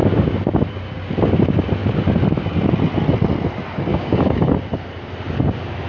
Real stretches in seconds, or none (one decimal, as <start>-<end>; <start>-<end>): 0.0-3.9; 4.5-5.9